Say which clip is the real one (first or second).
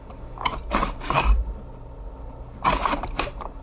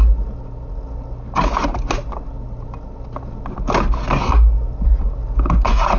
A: second